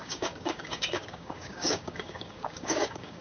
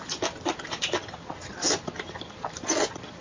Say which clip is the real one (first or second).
second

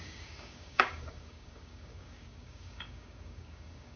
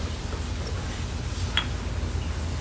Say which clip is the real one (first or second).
second